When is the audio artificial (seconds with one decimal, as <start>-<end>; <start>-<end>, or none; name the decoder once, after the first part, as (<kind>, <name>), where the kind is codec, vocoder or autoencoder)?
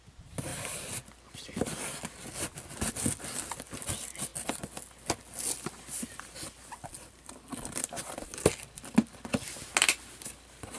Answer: none